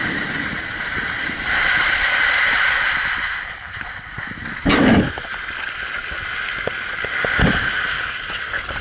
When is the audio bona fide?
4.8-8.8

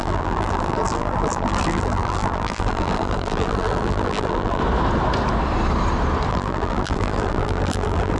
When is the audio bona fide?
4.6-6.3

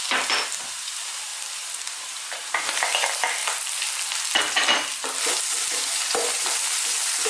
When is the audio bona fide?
0.0-0.7; 3.4-5.7